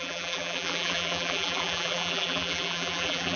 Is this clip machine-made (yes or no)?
yes